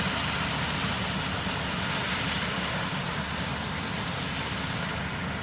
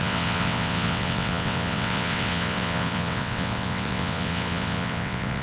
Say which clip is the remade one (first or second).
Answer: second